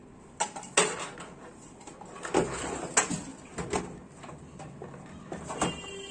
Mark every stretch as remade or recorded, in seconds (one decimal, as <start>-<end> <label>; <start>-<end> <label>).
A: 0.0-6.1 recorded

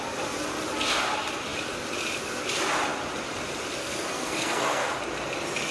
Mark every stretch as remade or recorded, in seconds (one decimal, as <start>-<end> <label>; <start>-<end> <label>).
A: 0.0-3.8 recorded; 3.8-4.9 remade; 4.9-5.7 recorded

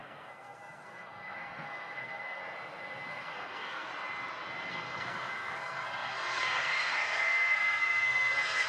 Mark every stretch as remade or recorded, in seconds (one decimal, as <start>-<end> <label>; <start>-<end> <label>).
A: 0.0-2.4 remade; 2.4-3.1 recorded; 3.1-3.9 remade; 3.9-4.7 recorded; 4.7-8.7 remade